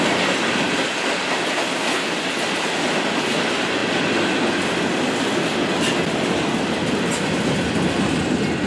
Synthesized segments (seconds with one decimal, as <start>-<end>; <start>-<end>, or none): none